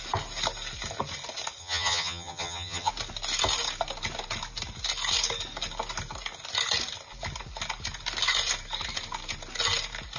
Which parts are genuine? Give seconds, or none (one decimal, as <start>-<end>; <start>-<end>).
0.0-1.6; 2.9-10.2